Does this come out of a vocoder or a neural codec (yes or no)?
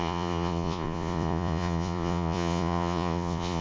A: yes